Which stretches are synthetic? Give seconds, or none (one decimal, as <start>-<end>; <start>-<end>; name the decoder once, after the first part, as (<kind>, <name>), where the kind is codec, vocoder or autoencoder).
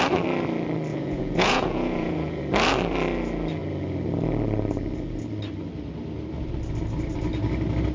0.9-2.4 (vocoder, Vocos)